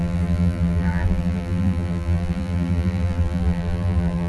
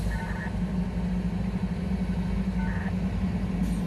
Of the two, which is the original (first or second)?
second